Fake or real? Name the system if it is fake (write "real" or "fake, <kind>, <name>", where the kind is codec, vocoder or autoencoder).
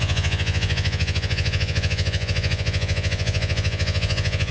fake, vocoder, Vocos